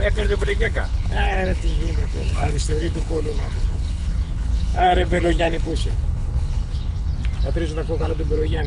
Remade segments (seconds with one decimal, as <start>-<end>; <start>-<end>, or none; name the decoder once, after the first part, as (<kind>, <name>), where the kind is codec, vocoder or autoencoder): 0.0-7.1 (codec, HILCodec); 8.0-8.7